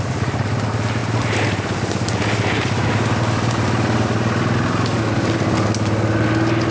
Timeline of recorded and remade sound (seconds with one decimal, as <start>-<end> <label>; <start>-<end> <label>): 0.0-6.7 recorded